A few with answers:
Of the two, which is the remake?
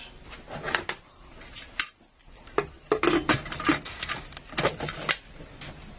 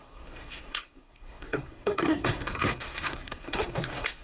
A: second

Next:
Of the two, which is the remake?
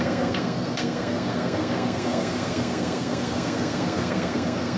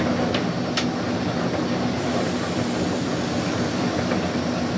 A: first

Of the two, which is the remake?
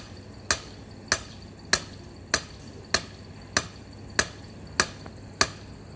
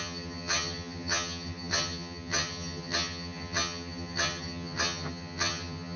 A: second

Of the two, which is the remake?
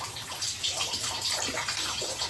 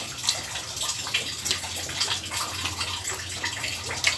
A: first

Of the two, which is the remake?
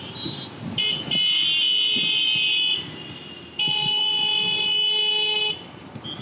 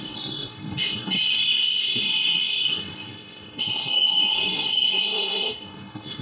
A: second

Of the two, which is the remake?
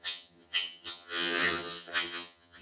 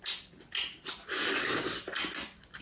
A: first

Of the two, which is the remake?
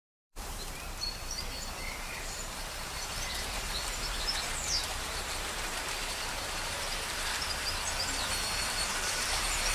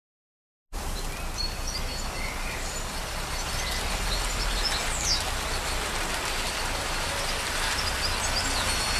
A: first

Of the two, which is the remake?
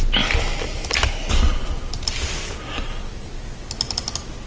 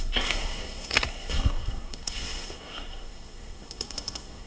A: second